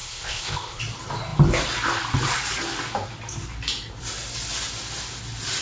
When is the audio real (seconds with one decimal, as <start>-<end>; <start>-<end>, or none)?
0.8-5.6